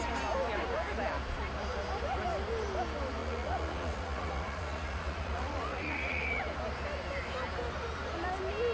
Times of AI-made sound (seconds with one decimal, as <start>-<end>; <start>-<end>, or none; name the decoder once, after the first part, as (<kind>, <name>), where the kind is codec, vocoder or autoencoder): 3.2-6.4 (vocoder, Vocos)